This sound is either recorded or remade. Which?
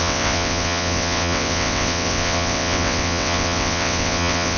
remade